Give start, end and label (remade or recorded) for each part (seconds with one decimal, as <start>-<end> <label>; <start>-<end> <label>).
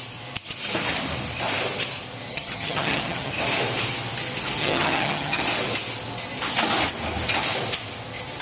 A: 0.0-2.3 recorded; 2.3-3.3 remade; 3.3-4.6 recorded; 4.6-5.4 remade; 5.4-8.4 recorded